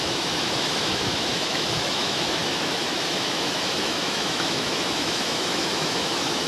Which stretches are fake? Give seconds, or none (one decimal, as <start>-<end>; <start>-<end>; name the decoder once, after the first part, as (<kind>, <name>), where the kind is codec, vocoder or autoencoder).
0.0-6.5 (autoencoder, DAC-VAE)